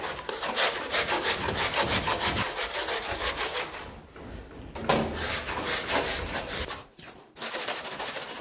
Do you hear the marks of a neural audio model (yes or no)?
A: no